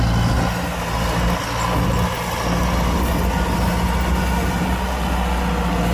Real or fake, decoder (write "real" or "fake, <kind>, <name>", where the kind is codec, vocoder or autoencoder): real